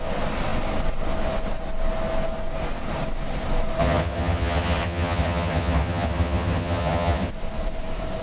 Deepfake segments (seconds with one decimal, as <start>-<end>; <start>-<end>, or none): 3.8-7.3